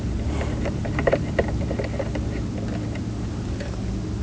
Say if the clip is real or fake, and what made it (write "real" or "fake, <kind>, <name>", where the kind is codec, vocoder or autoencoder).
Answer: real